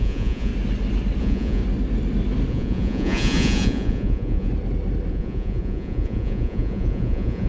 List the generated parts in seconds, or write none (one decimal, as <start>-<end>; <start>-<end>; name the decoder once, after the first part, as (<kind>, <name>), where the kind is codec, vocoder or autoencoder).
0.0-0.5 (vocoder, Vocos); 1.2-1.6; 2.5-4.5; 5.1-7.5